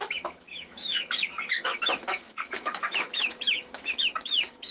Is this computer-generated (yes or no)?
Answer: yes